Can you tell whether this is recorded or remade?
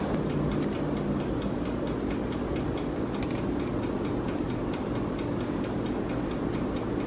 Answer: recorded